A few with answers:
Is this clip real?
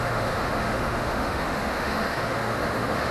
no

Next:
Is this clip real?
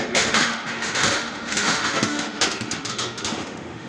no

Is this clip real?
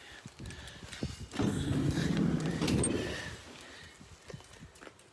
yes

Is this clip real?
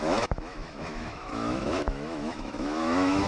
no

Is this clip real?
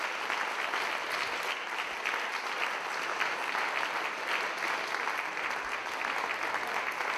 yes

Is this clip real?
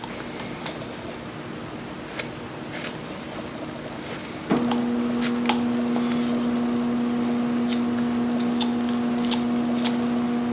yes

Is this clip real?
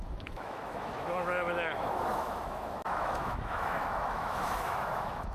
no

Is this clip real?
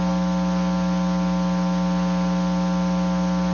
yes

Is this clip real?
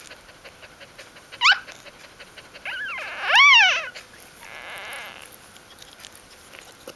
yes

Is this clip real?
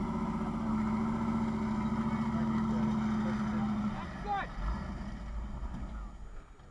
yes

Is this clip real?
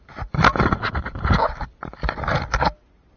yes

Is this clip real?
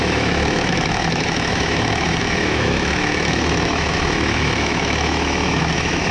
no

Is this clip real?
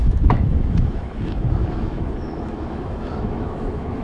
no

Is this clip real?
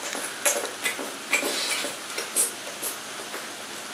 yes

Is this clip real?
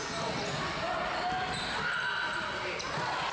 yes